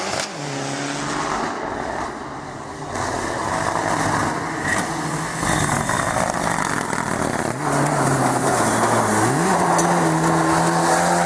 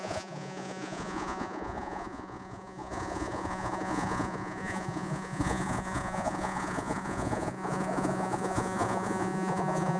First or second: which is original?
first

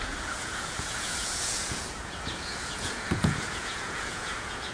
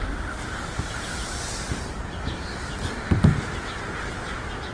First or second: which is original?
second